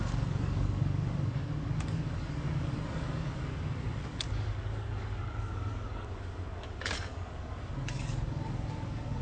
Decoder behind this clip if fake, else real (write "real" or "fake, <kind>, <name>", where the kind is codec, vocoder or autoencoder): fake, codec, DAC